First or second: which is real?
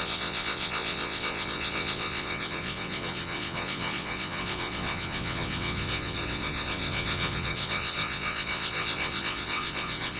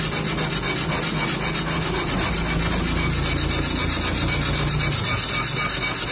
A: second